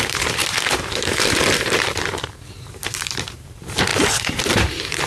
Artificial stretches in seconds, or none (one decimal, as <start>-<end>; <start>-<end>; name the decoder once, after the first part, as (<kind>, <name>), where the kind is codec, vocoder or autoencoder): 0.0-5.1 (vocoder, BigVGAN v2)